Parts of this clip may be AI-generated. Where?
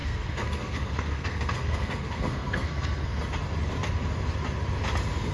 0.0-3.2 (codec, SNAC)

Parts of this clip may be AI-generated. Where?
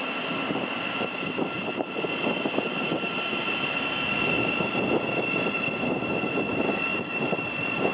6.9-7.5 (vocoder, BigVGAN v2)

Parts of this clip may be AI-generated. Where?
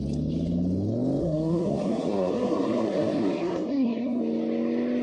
1.2-4.2 (codec, SNAC)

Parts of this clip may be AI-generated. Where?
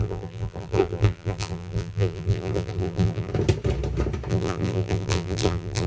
0.0-3.3 (vocoder, BigVGAN v2); 4.3-5.9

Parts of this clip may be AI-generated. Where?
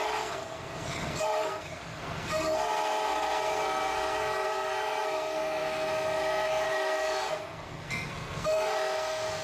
0.0-9.4 (codec, SNAC)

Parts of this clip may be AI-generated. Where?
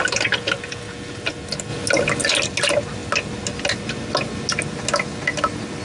none